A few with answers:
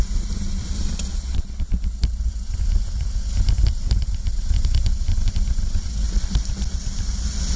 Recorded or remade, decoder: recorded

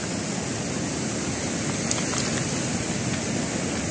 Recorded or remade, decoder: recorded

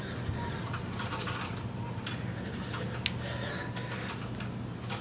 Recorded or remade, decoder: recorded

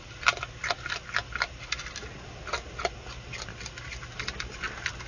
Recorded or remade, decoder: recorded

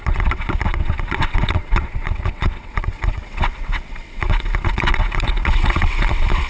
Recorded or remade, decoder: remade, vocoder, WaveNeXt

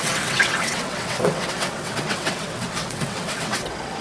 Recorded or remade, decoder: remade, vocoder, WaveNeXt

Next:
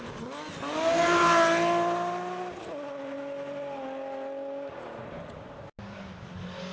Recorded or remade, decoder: recorded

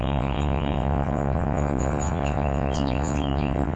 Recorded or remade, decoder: remade, vocoder, WaveNeXt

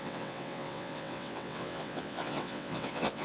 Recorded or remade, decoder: remade, vocoder, WaveNeXt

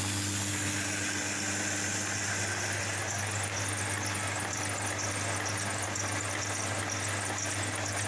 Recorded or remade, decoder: recorded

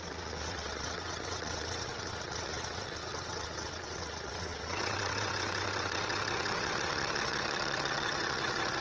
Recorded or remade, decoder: remade, vocoder, WaveNeXt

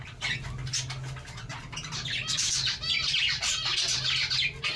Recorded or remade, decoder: recorded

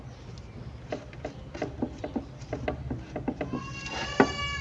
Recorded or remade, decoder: recorded